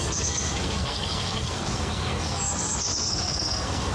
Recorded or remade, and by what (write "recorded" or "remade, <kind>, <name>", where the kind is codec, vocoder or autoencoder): remade, codec, SNAC